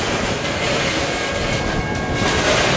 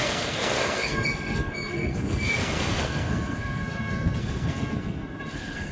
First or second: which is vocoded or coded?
second